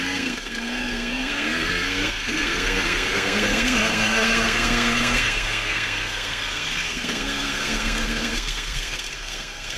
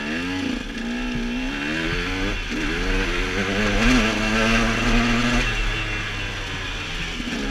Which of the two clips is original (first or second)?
second